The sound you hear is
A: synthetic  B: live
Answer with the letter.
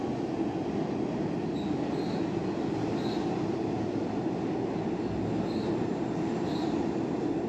B